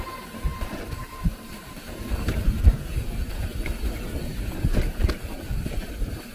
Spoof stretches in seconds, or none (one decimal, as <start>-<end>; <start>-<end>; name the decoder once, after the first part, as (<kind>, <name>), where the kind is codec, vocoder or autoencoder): 0.0-3.7 (vocoder, BigVGAN v2); 5.1-6.3